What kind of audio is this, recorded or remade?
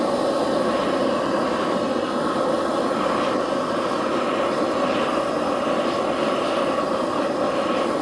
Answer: recorded